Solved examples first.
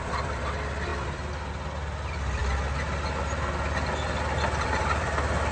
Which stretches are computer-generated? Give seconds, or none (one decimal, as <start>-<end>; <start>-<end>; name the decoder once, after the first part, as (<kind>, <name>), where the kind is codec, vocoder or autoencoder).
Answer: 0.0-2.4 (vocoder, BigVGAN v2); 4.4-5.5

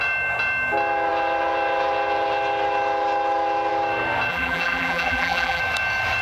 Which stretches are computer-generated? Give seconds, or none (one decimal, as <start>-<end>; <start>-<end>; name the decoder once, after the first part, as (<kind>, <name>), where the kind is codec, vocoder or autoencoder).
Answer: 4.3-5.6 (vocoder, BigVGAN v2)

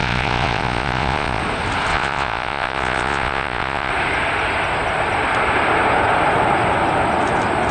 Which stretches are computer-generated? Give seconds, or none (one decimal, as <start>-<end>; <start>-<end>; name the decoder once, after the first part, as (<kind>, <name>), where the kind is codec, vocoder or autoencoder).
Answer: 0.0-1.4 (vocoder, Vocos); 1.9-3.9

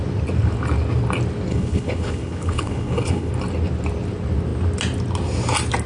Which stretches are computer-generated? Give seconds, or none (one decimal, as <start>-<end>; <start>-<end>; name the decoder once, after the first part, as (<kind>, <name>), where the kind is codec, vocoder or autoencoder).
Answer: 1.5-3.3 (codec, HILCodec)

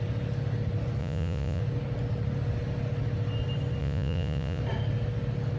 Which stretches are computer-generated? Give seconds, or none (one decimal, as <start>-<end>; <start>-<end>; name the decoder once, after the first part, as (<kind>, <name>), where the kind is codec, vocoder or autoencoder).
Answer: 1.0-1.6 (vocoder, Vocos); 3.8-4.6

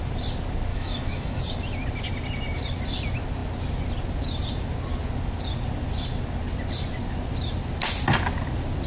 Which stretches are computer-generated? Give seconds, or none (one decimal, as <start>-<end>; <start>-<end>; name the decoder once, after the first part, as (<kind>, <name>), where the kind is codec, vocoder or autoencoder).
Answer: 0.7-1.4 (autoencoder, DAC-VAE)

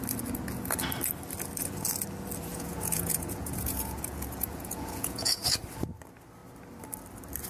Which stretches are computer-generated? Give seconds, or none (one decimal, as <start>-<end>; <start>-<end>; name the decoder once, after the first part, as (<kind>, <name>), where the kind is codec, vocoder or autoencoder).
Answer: 2.5-5.6 (vocoder, Vocos)